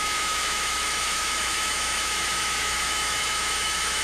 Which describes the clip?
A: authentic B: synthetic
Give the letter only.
B